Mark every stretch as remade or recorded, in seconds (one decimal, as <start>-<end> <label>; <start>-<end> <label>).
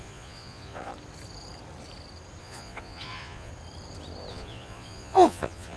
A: 0.0-0.9 remade; 0.9-2.4 recorded; 2.4-3.5 remade; 3.5-4.3 recorded; 4.3-5.8 remade